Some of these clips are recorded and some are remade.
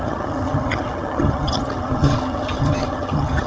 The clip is remade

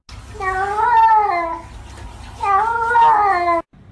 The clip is recorded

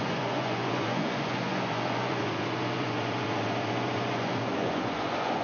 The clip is remade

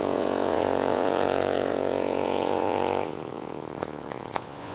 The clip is remade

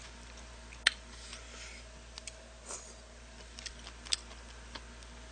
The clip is recorded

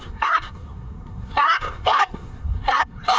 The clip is remade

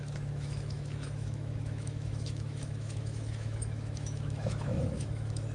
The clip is remade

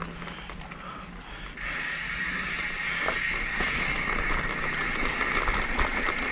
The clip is recorded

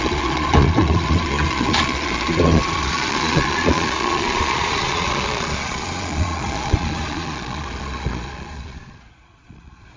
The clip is remade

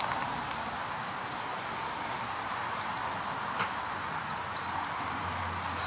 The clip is recorded